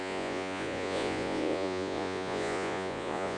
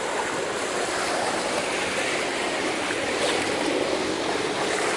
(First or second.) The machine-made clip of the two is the first